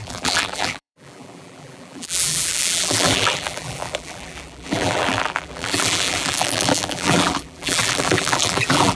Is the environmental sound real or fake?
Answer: fake